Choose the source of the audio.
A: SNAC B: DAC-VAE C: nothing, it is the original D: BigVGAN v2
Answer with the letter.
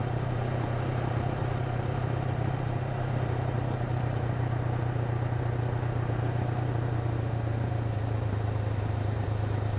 D